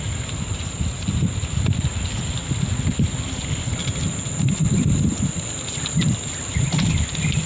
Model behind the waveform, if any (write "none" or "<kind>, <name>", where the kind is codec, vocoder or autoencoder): none